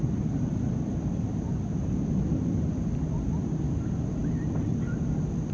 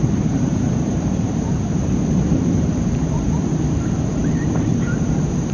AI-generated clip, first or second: second